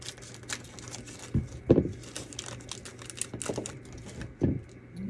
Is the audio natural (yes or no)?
yes